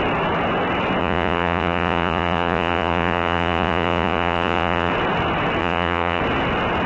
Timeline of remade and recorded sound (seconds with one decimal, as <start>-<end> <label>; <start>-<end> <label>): 0.0-1.0 recorded; 1.0-4.9 remade; 4.9-5.6 recorded; 5.6-6.2 remade; 6.2-6.9 recorded